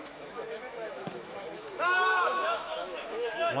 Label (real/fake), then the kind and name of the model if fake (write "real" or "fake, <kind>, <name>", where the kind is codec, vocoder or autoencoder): fake, autoencoder, DAC-VAE